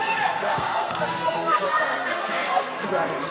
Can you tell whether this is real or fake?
fake